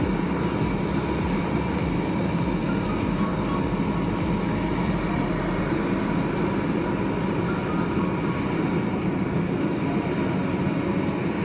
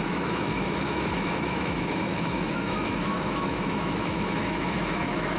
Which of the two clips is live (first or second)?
first